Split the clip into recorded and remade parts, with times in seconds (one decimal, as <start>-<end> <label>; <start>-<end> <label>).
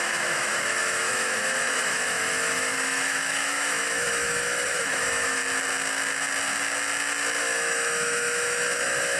0.0-5.4 remade; 5.4-7.4 recorded; 7.4-9.2 remade